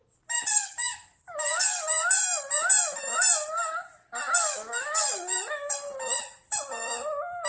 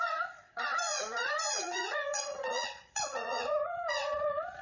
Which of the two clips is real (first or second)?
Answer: first